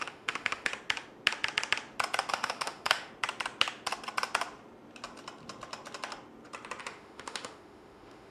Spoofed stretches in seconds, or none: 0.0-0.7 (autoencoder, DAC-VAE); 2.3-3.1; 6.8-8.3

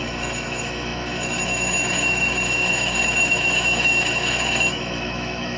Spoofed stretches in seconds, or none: 0.0-5.6 (autoencoder, DAC-VAE)

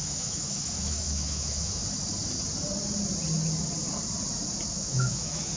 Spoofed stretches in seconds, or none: 0.0-1.8 (autoencoder, DAC-VAE); 4.7-5.6

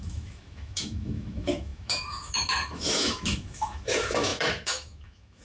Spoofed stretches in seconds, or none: 0.0-5.4 (autoencoder, DAC-VAE)

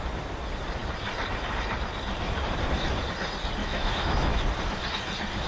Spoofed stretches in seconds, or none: 3.6-4.4 (autoencoder, DAC-VAE)

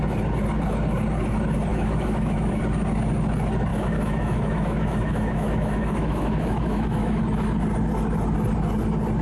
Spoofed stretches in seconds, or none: 1.7-2.6 (autoencoder, DAC-VAE); 3.7-7.2

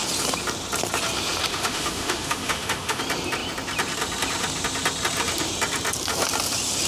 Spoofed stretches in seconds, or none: 1.5-3.0 (autoencoder, DAC-VAE)